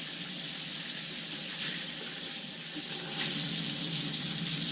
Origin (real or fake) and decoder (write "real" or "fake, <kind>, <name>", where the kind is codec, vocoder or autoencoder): real